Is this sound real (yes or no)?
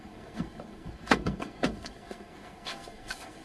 no